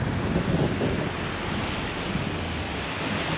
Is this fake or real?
real